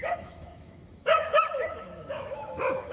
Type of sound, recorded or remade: remade